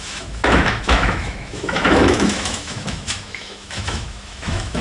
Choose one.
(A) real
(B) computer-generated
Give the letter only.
B